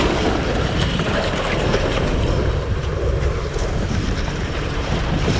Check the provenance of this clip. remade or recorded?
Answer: remade